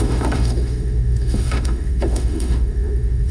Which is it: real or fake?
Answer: fake